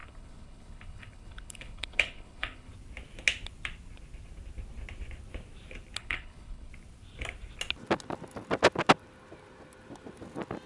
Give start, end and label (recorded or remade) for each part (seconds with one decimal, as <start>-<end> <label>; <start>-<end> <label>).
0.0-2.7 remade; 2.7-6.0 recorded; 6.0-6.7 remade; 6.7-10.7 recorded